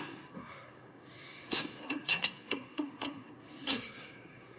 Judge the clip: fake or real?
fake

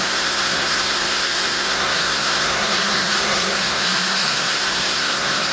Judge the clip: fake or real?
fake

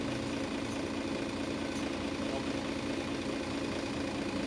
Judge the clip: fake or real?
real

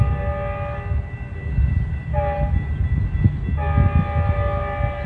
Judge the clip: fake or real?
real